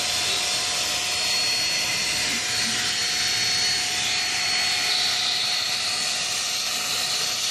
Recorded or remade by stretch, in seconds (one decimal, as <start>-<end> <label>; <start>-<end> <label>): 0.0-7.5 recorded